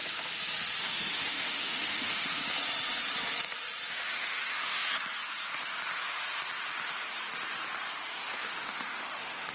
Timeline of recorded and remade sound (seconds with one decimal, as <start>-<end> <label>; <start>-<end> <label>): 0.0-0.8 recorded; 0.8-2.4 remade; 2.4-3.9 recorded; 3.9-4.9 remade; 4.9-8.2 recorded; 8.2-9.5 remade